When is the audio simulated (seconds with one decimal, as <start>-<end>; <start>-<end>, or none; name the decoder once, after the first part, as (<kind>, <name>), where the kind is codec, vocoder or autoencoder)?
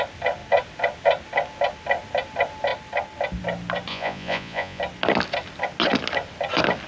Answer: 3.9-4.8 (vocoder, Vocos)